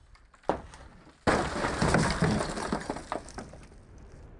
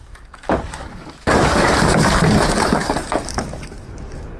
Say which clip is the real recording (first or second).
first